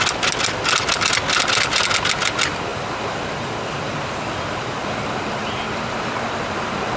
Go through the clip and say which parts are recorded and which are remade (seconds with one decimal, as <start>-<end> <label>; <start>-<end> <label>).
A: 0.0-7.0 recorded